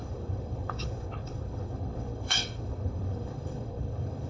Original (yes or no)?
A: no